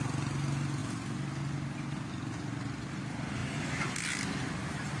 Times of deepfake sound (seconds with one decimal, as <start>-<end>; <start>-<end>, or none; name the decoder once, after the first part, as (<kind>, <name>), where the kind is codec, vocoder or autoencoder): none